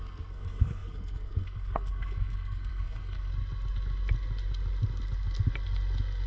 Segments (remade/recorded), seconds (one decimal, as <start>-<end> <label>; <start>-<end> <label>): 0.0-3.3 remade; 3.3-6.3 recorded